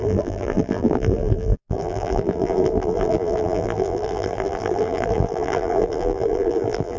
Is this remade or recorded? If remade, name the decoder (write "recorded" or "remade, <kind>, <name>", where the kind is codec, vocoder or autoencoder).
remade, vocoder, BigVGAN v2